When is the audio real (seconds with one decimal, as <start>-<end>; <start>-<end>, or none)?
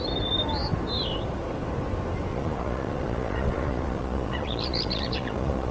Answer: 0.0-2.3